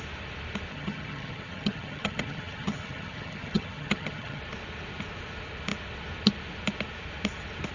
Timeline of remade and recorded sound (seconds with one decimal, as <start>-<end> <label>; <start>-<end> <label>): 0.0-0.7 recorded; 0.7-4.4 remade; 4.4-7.7 recorded